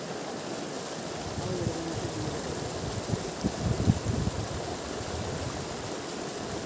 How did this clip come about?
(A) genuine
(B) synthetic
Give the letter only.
A